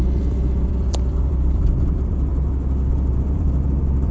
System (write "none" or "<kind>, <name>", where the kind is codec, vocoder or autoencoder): vocoder, BigVGAN v2